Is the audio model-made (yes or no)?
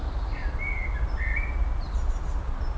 no